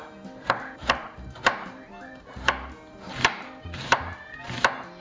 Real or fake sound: fake